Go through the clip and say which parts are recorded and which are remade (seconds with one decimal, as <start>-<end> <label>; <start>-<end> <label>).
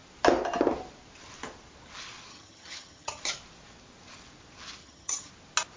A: 0.0-2.3 recorded; 2.3-3.2 remade; 3.2-4.8 recorded; 4.8-5.3 remade; 5.3-5.8 recorded